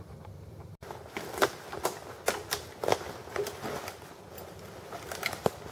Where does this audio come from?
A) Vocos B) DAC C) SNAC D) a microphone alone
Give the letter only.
D